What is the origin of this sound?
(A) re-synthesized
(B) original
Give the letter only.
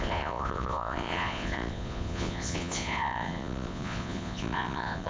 A